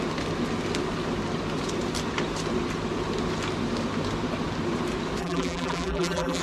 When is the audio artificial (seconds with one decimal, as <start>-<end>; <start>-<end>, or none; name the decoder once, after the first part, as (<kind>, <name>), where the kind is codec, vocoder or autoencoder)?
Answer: 5.2-6.4 (vocoder, BigVGAN v2)